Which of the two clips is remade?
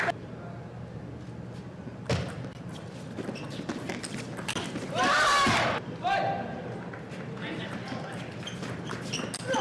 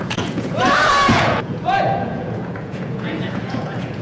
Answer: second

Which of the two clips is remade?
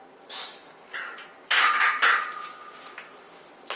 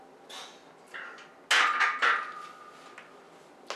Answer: first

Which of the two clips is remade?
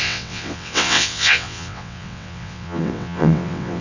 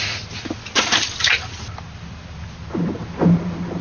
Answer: first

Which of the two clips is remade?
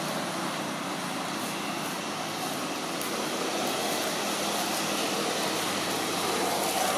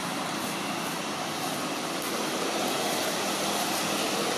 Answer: second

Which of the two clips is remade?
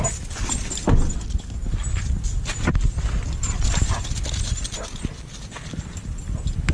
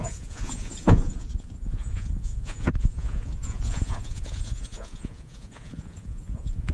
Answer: second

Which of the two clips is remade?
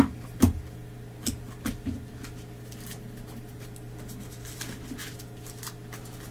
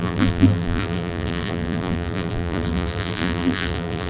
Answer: second